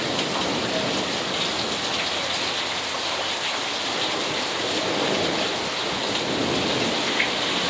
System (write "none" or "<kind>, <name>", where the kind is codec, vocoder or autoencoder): none